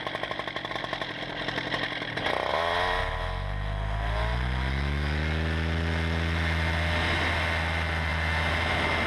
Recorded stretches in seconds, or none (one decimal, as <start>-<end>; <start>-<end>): 0.0-9.1